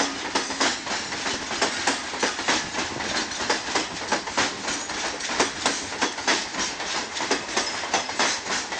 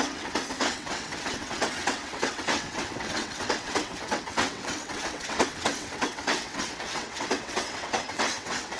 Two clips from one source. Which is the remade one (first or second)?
second